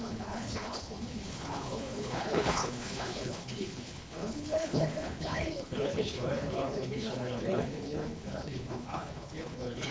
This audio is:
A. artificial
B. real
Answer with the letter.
A